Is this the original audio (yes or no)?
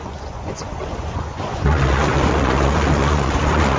no